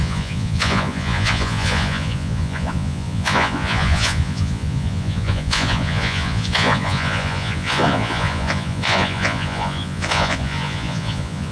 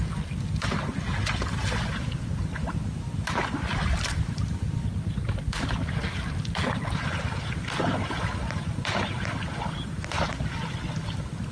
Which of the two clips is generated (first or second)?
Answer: first